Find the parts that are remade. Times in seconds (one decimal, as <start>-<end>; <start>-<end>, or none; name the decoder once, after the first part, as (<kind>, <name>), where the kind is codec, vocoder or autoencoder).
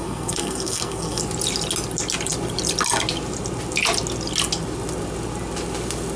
0.0-1.2 (codec, SNAC)